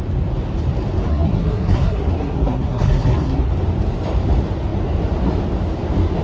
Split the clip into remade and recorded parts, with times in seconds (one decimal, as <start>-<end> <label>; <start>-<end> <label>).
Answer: 0.0-1.1 recorded; 1.1-3.5 remade; 3.5-6.2 recorded